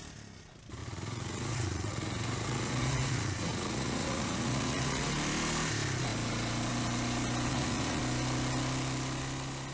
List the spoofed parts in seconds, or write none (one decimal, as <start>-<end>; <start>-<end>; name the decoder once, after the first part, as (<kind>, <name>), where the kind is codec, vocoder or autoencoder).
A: 0.8-5.1 (vocoder, Vocos); 7.5-8.0